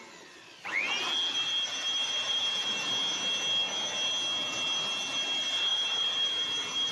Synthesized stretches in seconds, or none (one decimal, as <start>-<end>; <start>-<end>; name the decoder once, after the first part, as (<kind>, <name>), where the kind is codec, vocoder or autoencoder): 2.0-2.5 (vocoder, BigVGAN v2); 5.7-6.3

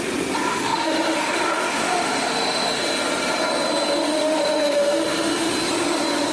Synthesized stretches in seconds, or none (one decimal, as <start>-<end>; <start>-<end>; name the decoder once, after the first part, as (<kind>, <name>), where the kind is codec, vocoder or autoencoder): 0.5-2.8 (autoencoder, DAC-VAE); 4.0-5.5

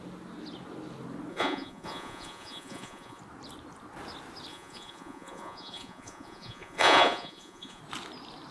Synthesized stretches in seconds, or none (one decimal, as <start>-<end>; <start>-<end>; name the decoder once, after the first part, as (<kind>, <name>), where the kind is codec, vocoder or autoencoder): 1.3-3.2 (vocoder, Vocos); 4.5-7.8

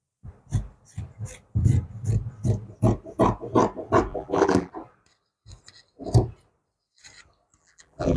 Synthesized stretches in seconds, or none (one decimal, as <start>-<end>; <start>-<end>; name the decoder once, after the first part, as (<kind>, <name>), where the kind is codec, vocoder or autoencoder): 4.1-4.7 (vocoder, BigVGAN v2); 7.6-8.2

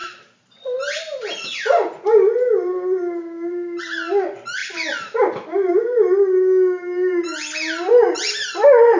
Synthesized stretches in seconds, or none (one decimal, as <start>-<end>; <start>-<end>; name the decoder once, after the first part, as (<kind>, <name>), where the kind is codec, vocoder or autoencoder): none

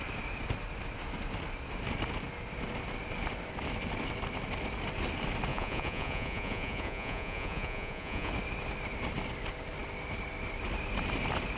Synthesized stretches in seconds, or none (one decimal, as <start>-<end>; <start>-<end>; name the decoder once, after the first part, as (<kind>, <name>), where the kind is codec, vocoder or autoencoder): 5.5-8.3 (vocoder, Vocos)

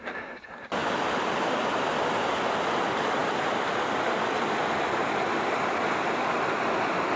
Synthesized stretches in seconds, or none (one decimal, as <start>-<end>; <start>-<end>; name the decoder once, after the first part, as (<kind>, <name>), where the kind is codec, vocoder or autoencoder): none

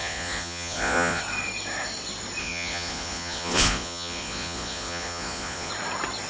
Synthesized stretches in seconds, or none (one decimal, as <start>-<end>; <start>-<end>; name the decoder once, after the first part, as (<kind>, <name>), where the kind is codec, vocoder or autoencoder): 0.0-1.2 (vocoder, Vocos); 2.4-5.7